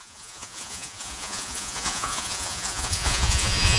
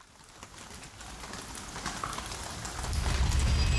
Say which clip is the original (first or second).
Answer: second